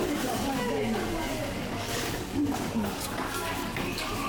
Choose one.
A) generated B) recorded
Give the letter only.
A